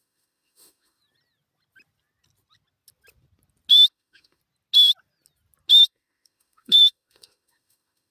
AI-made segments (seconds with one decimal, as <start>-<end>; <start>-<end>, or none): 0.0-1.0; 3.9-4.4; 5.8-8.1